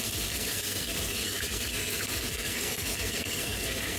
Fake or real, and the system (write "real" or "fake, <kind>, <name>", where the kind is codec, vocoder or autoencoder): fake, codec, SNAC